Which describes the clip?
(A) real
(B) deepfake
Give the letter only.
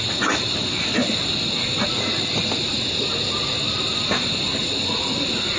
A